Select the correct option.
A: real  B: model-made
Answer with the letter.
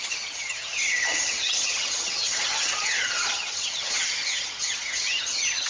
B